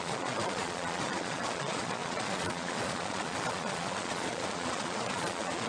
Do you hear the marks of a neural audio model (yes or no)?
yes